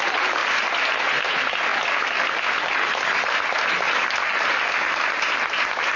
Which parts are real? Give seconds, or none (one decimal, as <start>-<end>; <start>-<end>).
0.0-6.0